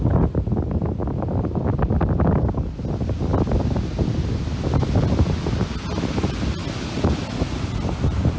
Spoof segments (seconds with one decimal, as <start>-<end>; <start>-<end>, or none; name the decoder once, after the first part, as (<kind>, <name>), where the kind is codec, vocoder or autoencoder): none